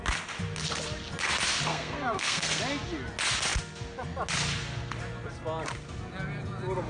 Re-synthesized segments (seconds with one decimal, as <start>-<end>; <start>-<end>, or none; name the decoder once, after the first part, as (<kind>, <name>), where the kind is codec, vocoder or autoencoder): 1.7-2.6 (codec, SNAC)